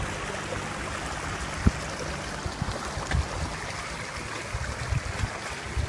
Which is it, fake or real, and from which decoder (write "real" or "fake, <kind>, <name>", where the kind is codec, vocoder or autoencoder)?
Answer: real